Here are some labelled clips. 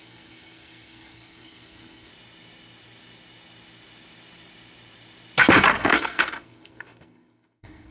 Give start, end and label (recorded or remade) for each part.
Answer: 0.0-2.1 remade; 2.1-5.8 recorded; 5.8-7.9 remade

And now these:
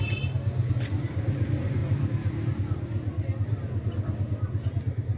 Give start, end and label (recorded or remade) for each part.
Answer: 0.0-5.2 recorded

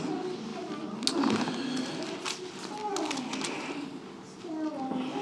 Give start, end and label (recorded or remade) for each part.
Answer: 0.0-5.2 recorded